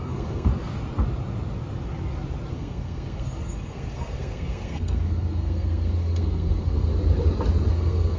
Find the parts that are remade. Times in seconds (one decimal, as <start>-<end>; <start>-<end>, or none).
0.0-0.5; 2.5-6.9; 7.7-8.2